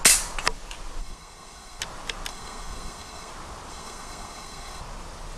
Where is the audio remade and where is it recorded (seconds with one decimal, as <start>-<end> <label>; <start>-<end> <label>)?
0.0-1.0 recorded; 1.0-1.8 remade; 1.8-2.3 recorded; 2.3-3.3 remade; 3.3-3.7 recorded; 3.7-4.8 remade; 4.8-5.4 recorded